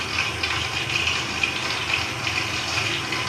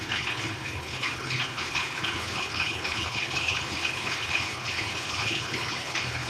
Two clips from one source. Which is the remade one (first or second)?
second